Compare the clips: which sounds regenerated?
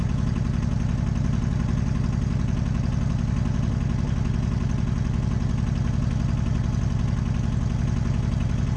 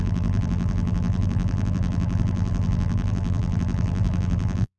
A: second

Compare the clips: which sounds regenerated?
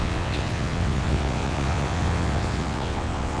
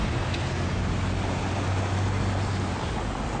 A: first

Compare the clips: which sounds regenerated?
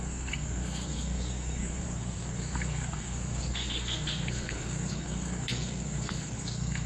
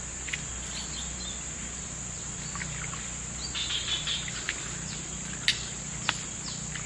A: first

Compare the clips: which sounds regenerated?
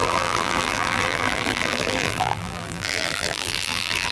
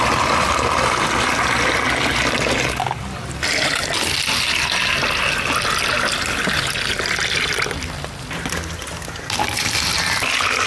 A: first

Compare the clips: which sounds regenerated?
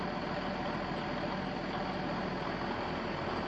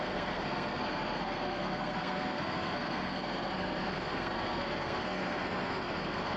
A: second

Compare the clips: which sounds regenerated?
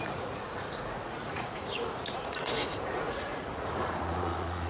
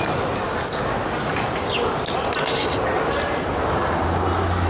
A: first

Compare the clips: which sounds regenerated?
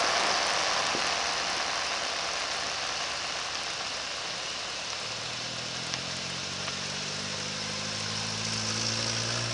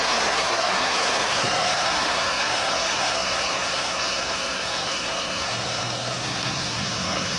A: second